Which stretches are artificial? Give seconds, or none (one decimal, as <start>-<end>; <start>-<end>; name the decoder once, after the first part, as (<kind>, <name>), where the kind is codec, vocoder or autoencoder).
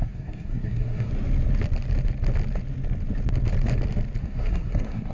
0.0-1.1 (codec, SNAC); 4.2-5.1